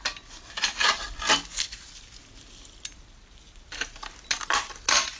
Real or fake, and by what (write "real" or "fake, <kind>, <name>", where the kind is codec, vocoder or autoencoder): real